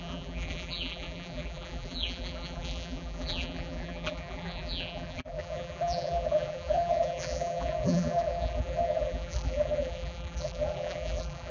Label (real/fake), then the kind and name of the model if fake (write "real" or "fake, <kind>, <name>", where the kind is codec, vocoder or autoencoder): fake, vocoder, BigVGAN v2